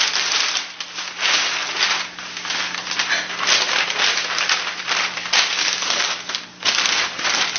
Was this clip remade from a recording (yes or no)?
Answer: no